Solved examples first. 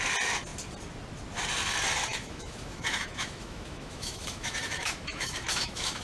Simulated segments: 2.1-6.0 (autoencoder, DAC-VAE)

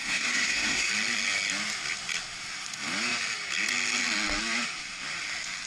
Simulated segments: 0.0-0.9 (codec, SNAC)

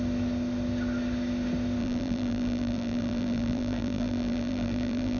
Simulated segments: 1.8-5.2 (vocoder, BigVGAN v2)

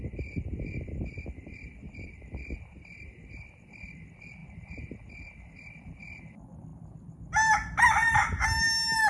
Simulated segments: none

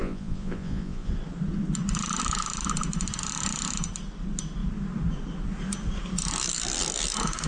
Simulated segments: 0.0-1.1 (vocoder, Vocos)

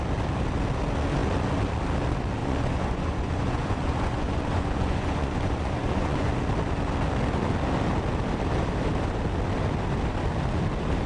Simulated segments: 2.4-6.3 (vocoder, Vocos)